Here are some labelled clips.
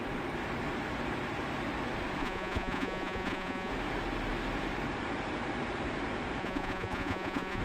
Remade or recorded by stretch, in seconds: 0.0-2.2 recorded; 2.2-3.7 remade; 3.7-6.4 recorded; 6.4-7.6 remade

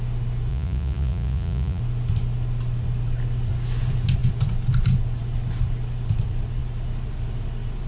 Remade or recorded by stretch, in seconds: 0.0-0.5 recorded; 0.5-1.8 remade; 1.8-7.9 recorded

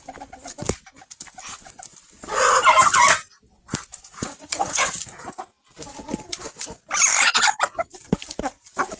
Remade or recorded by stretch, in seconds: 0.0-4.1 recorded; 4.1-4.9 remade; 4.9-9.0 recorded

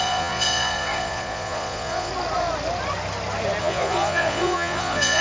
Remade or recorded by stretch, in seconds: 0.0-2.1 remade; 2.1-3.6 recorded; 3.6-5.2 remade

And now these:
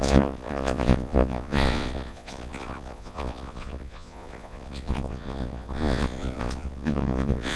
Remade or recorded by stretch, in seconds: 0.0-7.6 remade